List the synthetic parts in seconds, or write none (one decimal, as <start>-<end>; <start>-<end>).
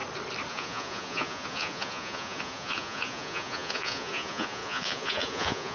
0.5-5.7